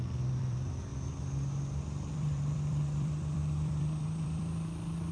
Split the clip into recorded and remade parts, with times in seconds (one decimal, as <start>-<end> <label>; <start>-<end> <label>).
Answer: 0.0-0.9 remade; 0.9-2.1 recorded; 2.1-5.1 remade